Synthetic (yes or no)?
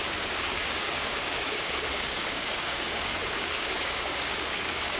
yes